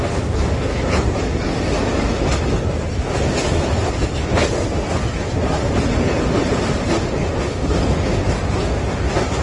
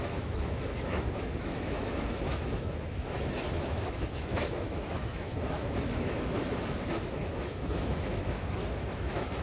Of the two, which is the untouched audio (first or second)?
first